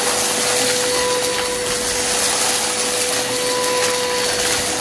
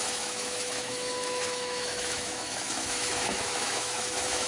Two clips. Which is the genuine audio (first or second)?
first